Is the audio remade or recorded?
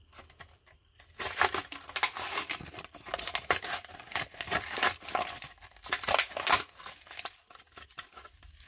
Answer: recorded